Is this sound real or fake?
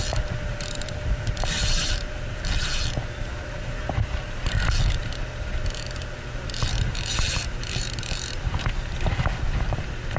fake